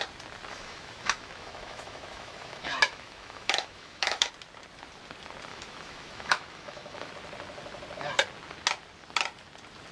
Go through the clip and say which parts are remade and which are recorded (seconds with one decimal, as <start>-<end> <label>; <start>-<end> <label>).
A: 0.0-0.5 recorded; 0.5-4.3 remade; 4.3-5.5 recorded; 5.5-7.1 remade; 7.1-9.9 recorded